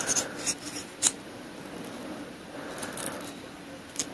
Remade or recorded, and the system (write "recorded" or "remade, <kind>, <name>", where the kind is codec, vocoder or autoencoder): recorded